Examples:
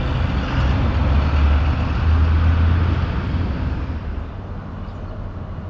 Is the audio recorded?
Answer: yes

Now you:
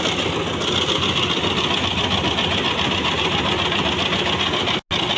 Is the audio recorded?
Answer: yes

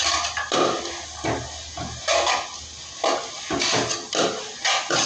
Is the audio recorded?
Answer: yes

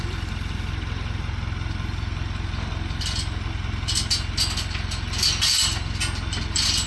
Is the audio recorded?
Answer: yes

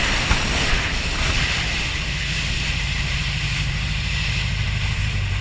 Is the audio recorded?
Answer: yes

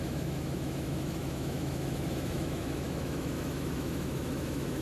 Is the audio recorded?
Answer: no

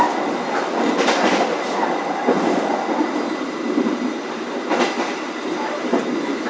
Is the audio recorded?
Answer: yes